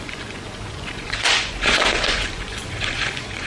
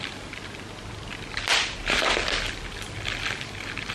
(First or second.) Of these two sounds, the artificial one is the first